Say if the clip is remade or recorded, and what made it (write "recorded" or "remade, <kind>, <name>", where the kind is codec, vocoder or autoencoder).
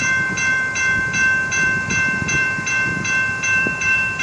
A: remade, vocoder, BigVGAN v2